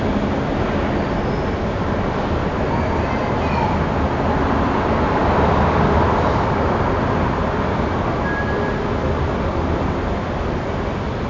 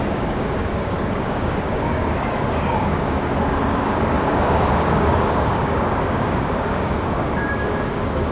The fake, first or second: second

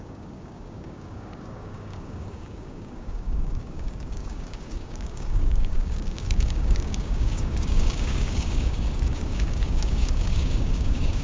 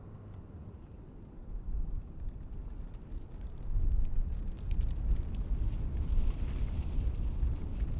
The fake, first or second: first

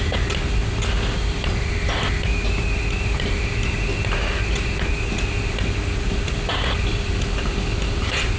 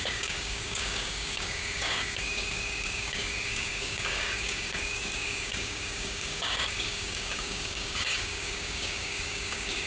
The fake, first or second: second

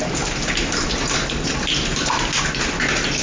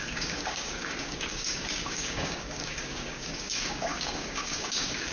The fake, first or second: second